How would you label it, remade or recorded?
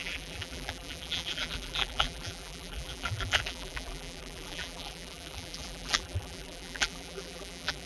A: remade